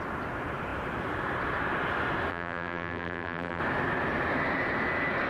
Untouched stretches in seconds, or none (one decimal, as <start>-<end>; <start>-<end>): 0.0-2.3; 3.6-5.3